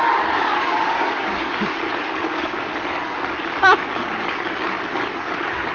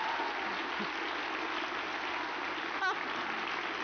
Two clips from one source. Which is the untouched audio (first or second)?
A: second